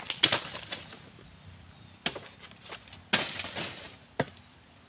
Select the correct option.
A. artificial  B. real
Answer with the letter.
B